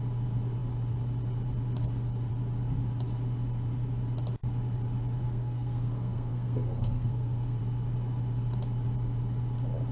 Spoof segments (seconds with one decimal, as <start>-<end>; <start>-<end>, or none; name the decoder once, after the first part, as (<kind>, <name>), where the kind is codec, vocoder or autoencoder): 5.2-7.6 (codec, SNAC)